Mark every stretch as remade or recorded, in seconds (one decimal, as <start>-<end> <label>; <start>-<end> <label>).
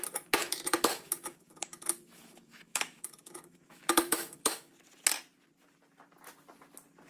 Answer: 0.0-0.4 recorded; 0.4-4.7 remade; 4.7-7.1 recorded